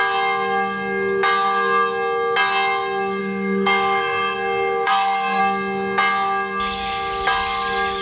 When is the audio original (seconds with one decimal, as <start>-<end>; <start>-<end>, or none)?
0.0-3.2; 5.4-8.0